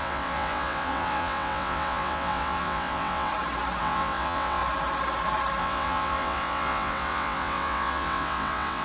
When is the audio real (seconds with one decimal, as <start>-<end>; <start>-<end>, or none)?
3.3-3.8; 4.6-5.6